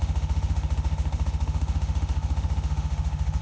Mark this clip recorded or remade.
remade